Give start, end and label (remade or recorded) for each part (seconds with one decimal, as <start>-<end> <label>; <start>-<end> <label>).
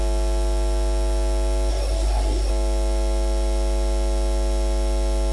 0.0-1.7 recorded; 1.7-2.5 remade; 2.5-5.3 recorded